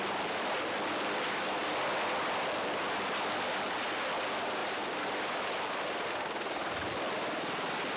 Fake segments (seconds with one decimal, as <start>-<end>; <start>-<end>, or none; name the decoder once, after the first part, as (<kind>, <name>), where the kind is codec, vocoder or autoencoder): none